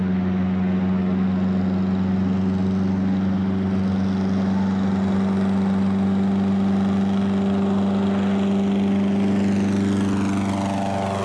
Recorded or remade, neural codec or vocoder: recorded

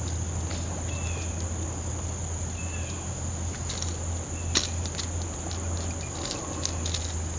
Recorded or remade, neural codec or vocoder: recorded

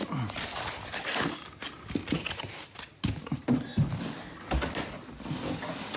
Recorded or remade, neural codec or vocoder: recorded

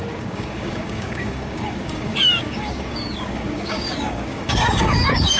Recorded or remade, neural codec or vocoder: remade, codec, DAC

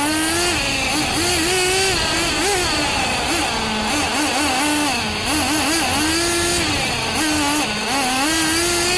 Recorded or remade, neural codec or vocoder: recorded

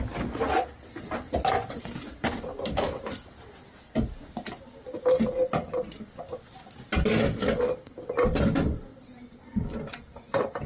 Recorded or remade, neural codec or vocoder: recorded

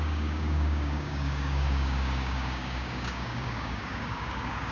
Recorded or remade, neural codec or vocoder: remade, codec, DAC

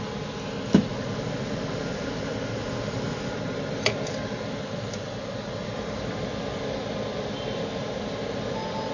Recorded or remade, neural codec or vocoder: recorded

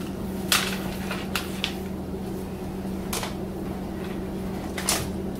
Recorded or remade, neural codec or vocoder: recorded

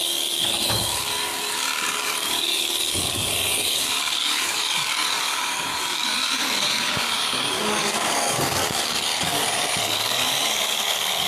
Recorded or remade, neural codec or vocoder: remade, codec, DAC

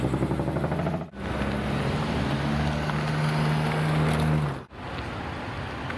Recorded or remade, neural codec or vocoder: recorded